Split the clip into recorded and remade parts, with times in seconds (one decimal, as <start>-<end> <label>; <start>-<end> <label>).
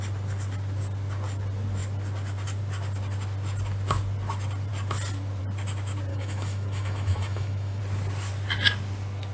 0.0-6.1 recorded; 6.1-7.8 remade; 7.8-9.3 recorded